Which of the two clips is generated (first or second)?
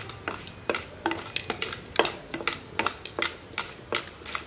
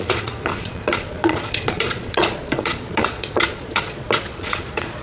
second